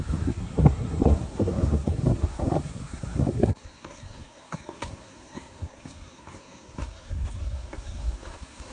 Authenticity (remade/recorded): remade